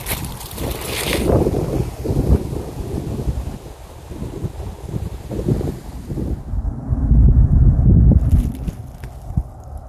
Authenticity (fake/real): real